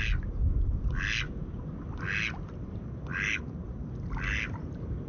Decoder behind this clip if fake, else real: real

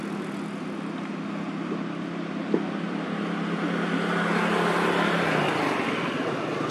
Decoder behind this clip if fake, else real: real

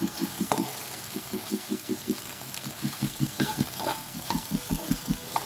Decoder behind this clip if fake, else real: fake, codec, SNAC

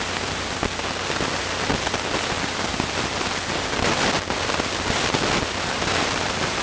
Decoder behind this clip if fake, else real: real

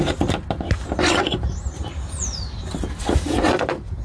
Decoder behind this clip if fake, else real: real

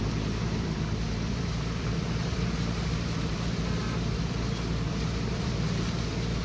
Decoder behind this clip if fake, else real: fake, vocoder, BigVGAN v2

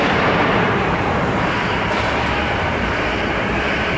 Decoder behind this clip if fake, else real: fake, vocoder, BigVGAN v2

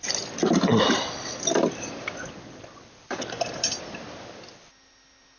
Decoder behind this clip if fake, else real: real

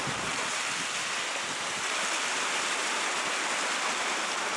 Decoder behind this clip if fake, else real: real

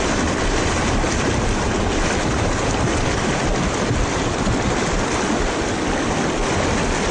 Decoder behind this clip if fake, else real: real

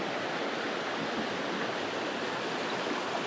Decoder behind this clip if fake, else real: real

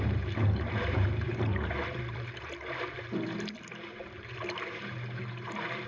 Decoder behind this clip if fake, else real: fake, vocoder, BigVGAN v2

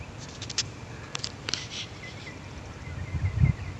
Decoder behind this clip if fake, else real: real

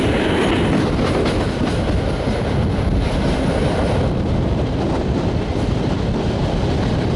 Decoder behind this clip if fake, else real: real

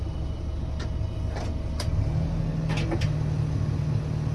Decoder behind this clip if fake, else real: real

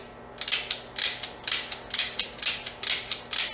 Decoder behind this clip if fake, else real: real